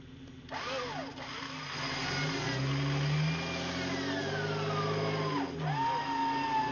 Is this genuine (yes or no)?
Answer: yes